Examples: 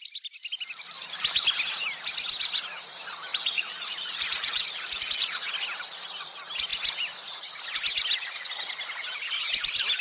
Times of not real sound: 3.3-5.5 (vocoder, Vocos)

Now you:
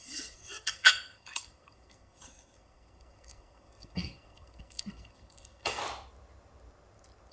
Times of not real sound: 0.0-5.8 (codec, SNAC)